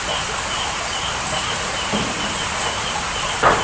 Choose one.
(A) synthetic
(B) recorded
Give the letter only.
B